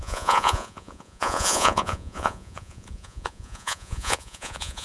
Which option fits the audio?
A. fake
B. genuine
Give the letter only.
A